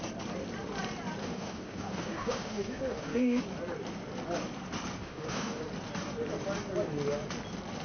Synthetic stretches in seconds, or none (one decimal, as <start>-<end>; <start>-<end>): 1.2-3.4; 5.0-5.6